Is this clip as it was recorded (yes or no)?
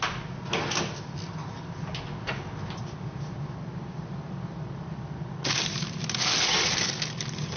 yes